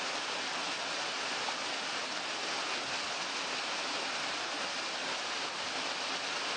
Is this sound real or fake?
real